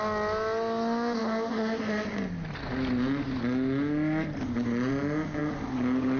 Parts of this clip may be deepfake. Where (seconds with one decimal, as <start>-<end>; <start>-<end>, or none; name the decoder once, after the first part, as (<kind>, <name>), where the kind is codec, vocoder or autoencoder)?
none